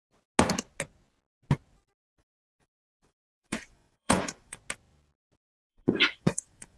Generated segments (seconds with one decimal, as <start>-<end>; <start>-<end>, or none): 2.1-4.6; 5.7-6.8